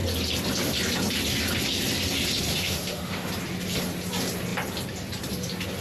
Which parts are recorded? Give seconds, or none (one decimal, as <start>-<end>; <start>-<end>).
0.0-2.5; 3.3-5.8